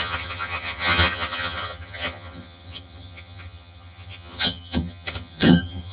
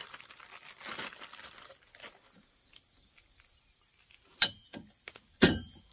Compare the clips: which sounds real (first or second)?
second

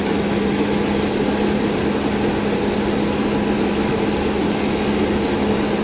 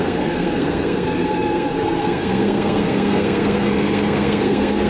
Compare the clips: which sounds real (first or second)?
first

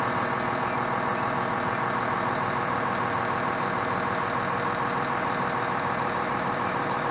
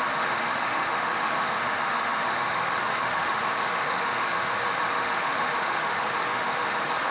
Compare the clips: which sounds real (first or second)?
first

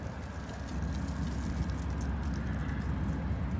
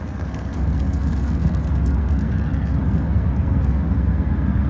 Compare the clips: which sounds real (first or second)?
first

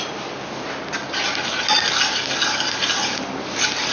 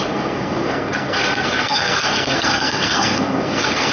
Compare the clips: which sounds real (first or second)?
first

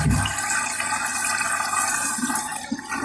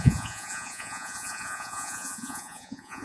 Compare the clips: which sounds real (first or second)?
first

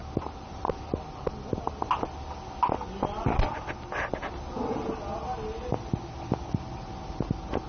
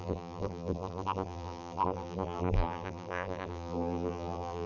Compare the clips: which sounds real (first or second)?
first